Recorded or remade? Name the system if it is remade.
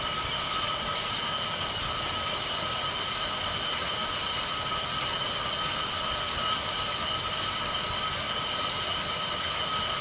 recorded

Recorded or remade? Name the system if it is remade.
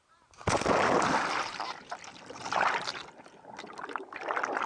recorded